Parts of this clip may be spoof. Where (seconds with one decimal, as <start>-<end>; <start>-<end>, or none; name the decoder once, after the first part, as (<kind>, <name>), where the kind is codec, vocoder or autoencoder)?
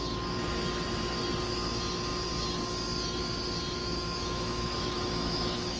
3.8-5.8 (autoencoder, DAC-VAE)